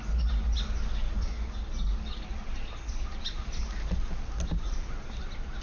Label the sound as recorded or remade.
recorded